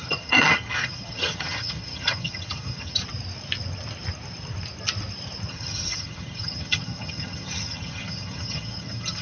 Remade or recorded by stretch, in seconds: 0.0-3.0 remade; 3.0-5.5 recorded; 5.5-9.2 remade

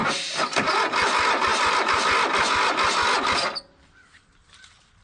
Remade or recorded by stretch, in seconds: 0.0-5.0 recorded

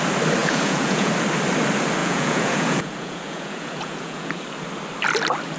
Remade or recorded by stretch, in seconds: 0.0-0.4 recorded; 0.4-1.1 remade; 1.1-2.0 recorded; 2.0-4.4 remade; 4.4-5.6 recorded

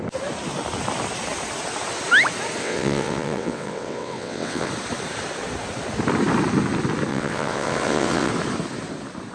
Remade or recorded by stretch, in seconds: 0.0-2.6 recorded; 2.6-4.7 remade; 4.7-7.1 recorded; 7.1-8.3 remade; 8.3-9.3 recorded